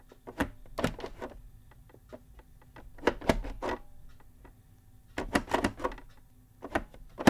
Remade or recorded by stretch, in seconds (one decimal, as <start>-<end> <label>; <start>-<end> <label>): 0.0-7.3 recorded

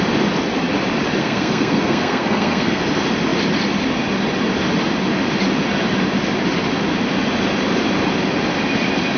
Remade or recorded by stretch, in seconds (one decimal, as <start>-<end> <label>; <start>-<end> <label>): 0.0-1.2 recorded; 1.2-2.8 remade; 2.8-9.2 recorded

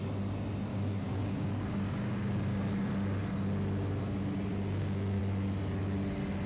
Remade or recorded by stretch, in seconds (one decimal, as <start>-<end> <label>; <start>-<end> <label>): 0.0-0.7 recorded; 0.7-2.9 remade; 2.9-4.5 recorded; 4.5-5.2 remade; 5.2-6.5 recorded

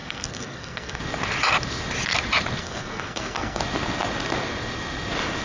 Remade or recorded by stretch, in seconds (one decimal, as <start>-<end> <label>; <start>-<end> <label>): 0.0-1.0 remade; 1.0-2.6 recorded; 2.6-3.6 remade; 3.6-5.4 recorded

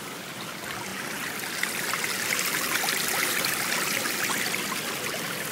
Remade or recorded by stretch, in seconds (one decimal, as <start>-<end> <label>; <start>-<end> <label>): 0.0-5.5 recorded

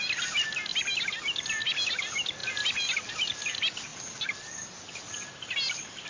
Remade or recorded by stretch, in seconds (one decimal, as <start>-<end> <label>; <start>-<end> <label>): 0.0-6.1 recorded

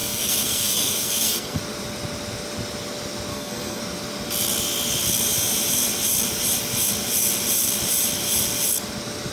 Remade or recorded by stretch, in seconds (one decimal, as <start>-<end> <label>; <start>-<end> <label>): 0.0-1.6 remade; 1.6-3.3 recorded; 3.3-3.8 remade; 3.8-9.3 recorded